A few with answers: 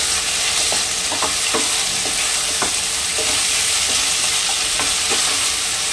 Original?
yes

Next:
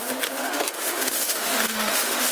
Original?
no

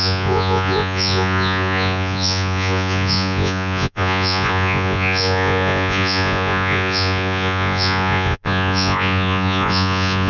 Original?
no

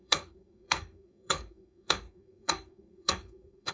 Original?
no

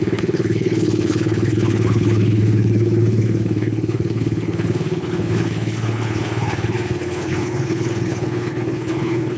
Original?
no